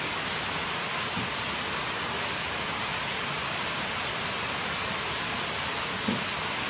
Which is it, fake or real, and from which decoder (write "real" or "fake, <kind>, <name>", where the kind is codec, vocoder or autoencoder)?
real